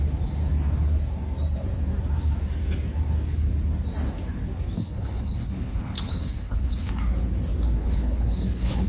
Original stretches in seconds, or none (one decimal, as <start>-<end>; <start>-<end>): 0.0-4.8; 6.9-7.8